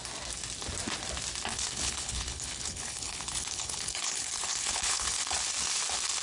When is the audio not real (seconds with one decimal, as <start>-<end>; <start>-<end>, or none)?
1.5-5.2